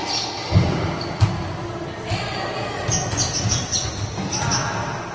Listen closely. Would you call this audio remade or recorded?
recorded